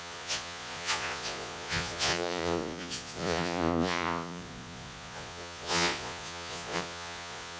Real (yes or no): no